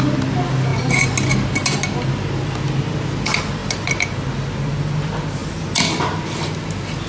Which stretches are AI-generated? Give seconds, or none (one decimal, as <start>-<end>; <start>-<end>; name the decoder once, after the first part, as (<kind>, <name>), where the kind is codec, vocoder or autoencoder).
none